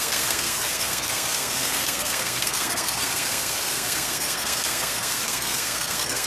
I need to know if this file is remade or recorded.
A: remade